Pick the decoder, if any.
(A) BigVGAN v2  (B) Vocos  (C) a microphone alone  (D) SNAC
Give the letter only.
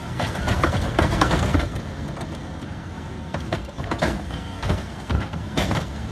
D